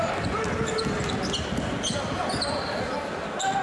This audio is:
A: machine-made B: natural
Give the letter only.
B